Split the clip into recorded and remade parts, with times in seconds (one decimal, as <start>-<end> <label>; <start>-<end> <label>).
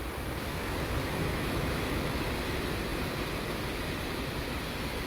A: 0.0-0.5 recorded; 0.5-2.2 remade; 2.2-5.1 recorded